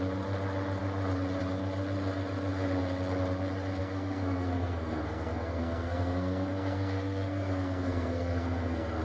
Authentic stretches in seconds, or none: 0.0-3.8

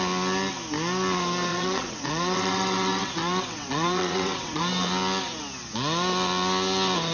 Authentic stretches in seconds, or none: 0.0-1.5; 4.6-7.1

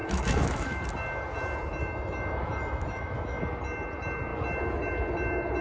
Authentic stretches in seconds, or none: 0.8-1.8; 3.4-5.6

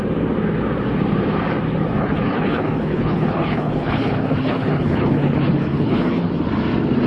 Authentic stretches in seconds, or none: 0.0-2.0; 6.3-7.1

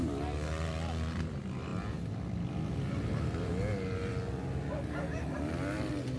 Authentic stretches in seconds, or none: 0.0-6.2

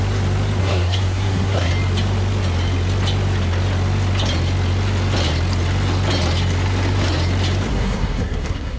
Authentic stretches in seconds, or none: 0.0-0.6; 1.7-7.7

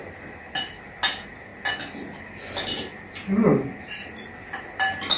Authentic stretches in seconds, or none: 0.0-5.2

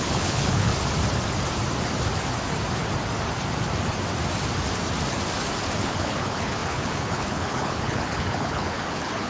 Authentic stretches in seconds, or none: 0.7-5.8